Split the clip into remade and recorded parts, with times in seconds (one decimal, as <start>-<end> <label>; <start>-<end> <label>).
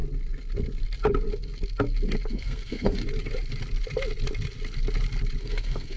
0.0-2.3 recorded; 2.3-3.0 remade; 3.0-5.4 recorded; 5.4-6.0 remade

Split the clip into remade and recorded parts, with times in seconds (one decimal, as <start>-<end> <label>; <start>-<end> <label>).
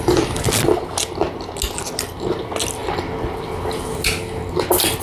0.0-5.0 recorded